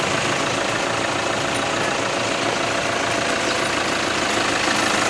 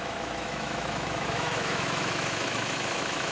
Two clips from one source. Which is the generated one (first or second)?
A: second